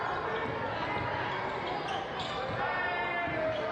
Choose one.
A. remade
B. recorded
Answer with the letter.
B